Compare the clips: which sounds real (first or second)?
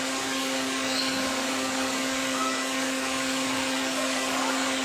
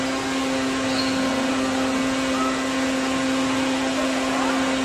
second